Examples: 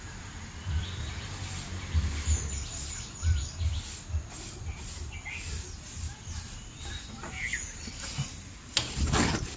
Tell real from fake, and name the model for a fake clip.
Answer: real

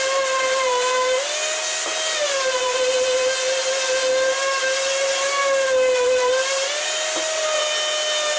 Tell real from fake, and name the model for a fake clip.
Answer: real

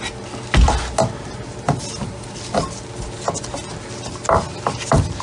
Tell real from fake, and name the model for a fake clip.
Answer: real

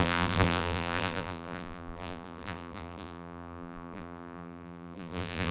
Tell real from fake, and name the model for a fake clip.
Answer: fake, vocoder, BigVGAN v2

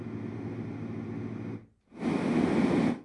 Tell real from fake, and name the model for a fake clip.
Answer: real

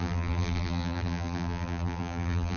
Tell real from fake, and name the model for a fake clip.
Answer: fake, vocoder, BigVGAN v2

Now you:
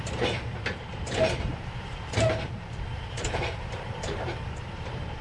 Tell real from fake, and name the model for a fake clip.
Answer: fake, vocoder, BigVGAN v2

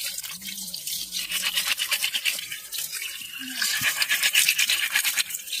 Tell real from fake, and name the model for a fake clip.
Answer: fake, vocoder, BigVGAN v2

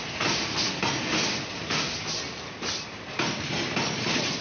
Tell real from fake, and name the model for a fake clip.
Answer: real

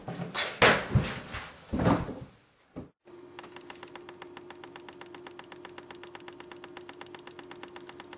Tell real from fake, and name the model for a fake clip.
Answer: real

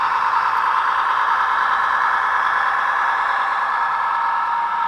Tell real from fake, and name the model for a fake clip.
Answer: fake, vocoder, BigVGAN v2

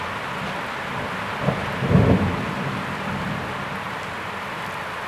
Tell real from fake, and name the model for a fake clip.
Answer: real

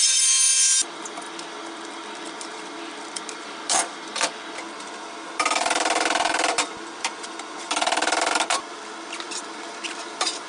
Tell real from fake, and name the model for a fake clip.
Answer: fake, vocoder, BigVGAN v2